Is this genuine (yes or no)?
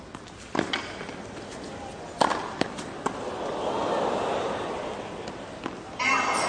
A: yes